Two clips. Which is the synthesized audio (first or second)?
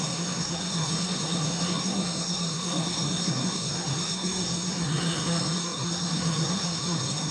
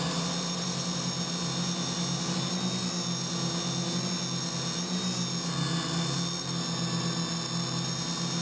first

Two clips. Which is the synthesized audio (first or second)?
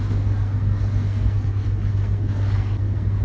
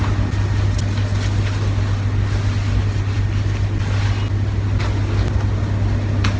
first